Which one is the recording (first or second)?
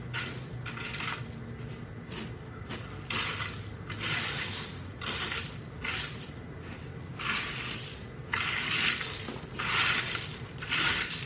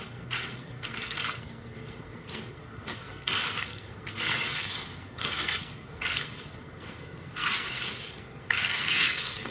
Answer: first